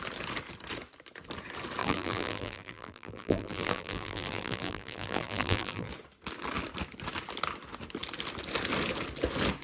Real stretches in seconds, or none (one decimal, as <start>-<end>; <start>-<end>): 0.0-1.8; 5.9-9.6